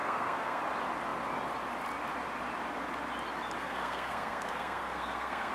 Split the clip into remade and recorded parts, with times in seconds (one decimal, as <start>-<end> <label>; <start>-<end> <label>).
0.0-0.6 remade; 0.6-3.6 recorded; 3.6-5.5 remade